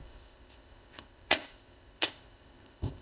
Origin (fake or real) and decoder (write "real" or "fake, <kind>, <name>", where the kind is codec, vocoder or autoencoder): fake, codec, ZipCodec